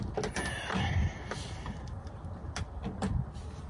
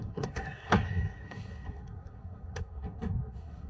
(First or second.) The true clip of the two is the first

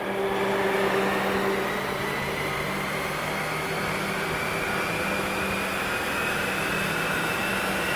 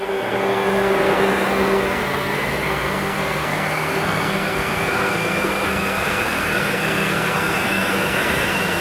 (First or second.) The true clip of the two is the first